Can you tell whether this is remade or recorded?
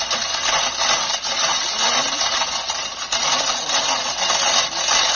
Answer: recorded